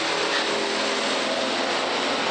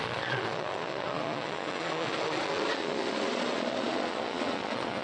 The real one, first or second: first